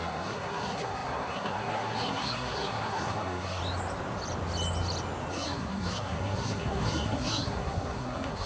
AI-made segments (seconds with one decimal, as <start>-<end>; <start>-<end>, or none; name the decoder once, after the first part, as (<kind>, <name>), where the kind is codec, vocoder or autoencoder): 0.0-3.6 (codec, SNAC); 5.3-8.5